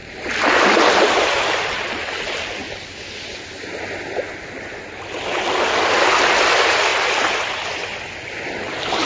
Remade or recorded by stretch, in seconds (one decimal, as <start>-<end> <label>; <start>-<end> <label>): 0.0-9.1 recorded